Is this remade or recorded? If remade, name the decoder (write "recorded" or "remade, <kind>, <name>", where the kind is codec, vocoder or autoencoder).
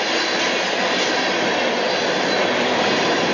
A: recorded